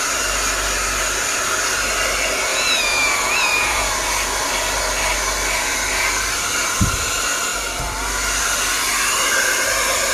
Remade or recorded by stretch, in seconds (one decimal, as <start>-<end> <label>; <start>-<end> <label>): 0.0-2.5 recorded; 2.5-3.9 remade; 3.9-10.1 recorded